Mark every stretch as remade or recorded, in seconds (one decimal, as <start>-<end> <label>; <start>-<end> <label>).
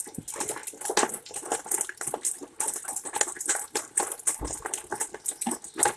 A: 0.0-6.0 recorded